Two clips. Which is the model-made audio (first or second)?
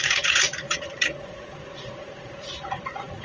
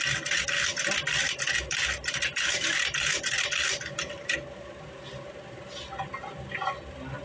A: first